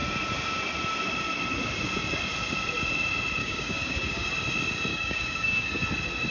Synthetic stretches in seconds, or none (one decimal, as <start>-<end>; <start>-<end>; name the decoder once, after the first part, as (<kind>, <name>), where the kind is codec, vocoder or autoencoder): 3.4-4.3 (codec, DAC); 4.9-5.8